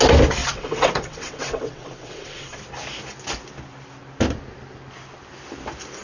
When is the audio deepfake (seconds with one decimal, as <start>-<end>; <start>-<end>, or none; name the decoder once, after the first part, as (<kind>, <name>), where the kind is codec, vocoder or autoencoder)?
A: 0.4-2.6 (vocoder, WaveNeXt)